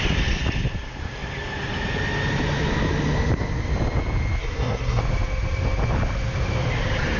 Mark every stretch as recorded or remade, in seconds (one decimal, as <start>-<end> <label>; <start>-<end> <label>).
0.0-4.4 recorded; 4.4-5.0 remade; 5.0-7.2 recorded